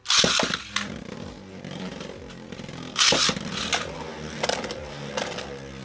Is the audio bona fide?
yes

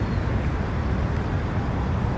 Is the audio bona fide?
yes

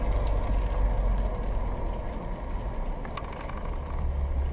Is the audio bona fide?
yes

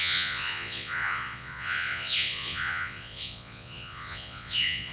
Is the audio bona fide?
no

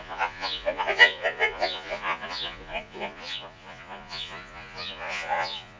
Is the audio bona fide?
no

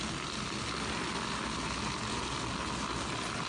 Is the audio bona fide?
yes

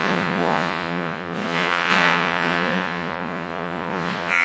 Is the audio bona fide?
no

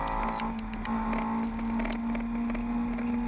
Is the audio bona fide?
yes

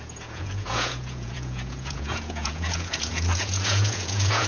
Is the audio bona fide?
no